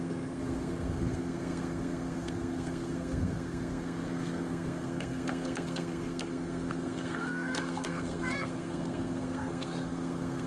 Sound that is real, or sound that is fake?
fake